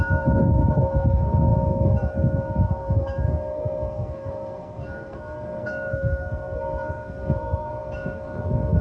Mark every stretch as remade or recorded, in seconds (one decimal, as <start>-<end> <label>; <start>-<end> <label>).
0.0-8.8 remade